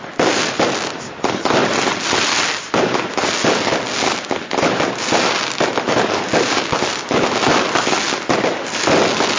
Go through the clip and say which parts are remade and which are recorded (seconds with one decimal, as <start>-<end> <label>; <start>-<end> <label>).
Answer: 0.0-9.4 recorded